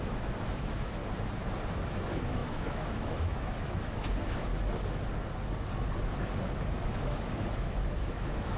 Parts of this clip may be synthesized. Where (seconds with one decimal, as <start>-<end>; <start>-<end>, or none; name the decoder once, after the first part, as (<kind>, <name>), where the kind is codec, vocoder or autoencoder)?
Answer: 0.0-1.0 (autoencoder, DAC-VAE); 1.7-4.5; 6.6-8.6